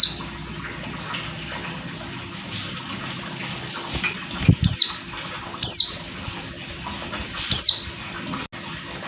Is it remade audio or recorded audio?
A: recorded